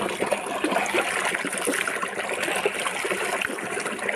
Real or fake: real